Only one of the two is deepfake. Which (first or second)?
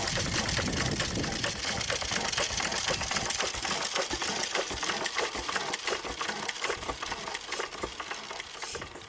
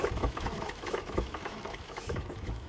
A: second